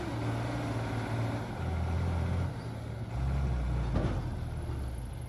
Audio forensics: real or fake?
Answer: real